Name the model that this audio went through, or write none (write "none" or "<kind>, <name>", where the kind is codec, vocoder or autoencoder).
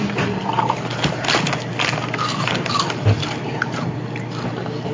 none